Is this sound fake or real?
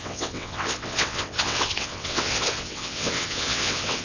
fake